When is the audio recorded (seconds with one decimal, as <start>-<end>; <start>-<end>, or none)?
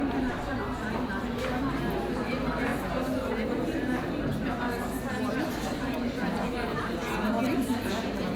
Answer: 0.0-8.4